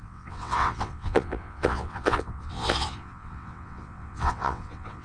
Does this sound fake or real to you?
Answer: fake